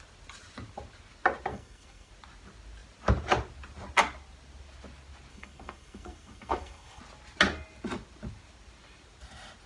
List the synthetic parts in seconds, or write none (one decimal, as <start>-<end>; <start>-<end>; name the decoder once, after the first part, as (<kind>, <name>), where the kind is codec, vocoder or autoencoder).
1.5-2.1 (codec, SNAC); 5.3-7.0